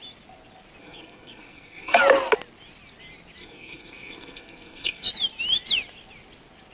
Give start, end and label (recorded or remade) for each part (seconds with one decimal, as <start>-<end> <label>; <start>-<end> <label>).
0.0-0.8 recorded; 0.8-2.0 remade; 2.0-3.4 recorded; 3.4-5.1 remade; 5.1-6.7 recorded